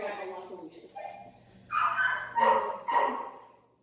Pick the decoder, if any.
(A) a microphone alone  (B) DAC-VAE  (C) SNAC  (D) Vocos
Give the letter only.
A